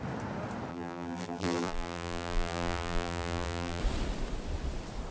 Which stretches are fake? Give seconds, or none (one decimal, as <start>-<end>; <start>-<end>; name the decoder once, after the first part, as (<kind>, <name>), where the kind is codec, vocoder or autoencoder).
0.7-3.8 (vocoder, BigVGAN v2)